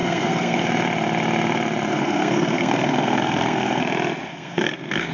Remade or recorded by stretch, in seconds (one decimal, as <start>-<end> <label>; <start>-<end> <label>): 0.0-0.6 remade; 0.6-1.9 recorded; 1.9-3.8 remade; 3.8-4.3 recorded; 4.3-5.1 remade